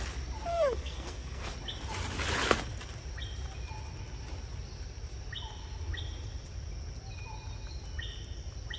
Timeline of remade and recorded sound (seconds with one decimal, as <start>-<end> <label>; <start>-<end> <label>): 0.0-0.5 recorded; 0.5-1.5 remade; 1.5-8.8 recorded